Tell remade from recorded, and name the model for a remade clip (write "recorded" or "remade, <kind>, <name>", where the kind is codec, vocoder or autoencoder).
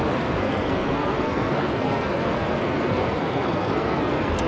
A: remade, codec, SNAC